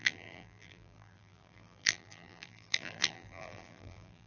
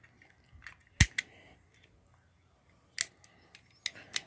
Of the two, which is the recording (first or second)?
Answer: second